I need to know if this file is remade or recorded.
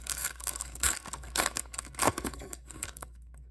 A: remade